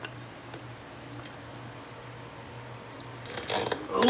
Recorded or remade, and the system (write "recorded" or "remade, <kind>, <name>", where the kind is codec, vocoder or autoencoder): recorded